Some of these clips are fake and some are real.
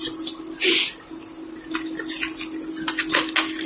real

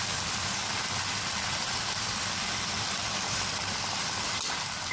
real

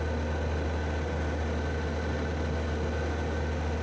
real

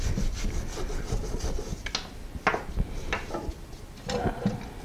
real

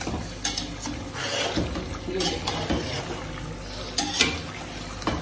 real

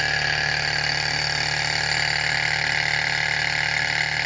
real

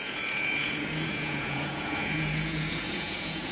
fake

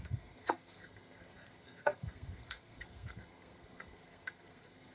fake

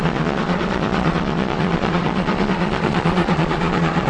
fake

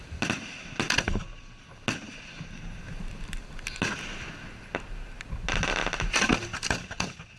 real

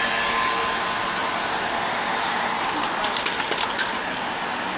real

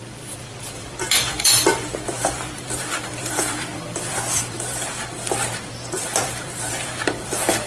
fake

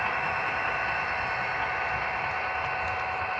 real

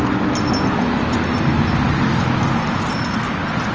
real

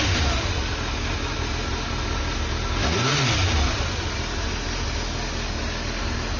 real